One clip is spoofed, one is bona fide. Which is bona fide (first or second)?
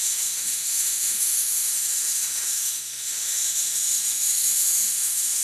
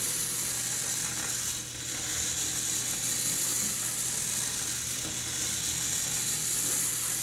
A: second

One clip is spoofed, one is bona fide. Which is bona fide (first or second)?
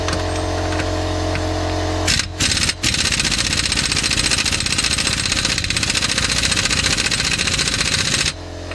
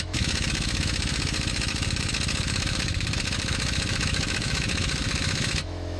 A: first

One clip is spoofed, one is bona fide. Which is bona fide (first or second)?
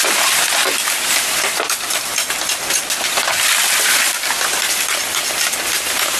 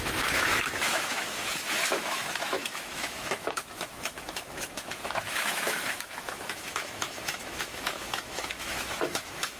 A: first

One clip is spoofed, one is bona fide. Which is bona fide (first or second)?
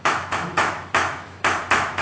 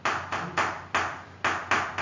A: second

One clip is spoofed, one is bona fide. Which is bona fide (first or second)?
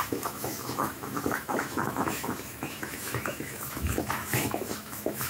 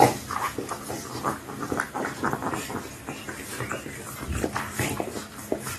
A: second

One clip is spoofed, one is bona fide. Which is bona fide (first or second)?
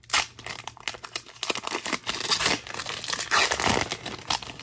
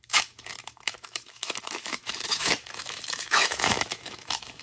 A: first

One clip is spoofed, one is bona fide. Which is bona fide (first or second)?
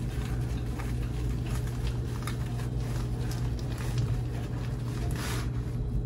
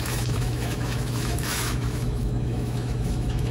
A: first